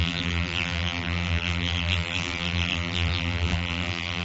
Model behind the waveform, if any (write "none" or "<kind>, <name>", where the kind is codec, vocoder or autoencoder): vocoder, BigVGAN v2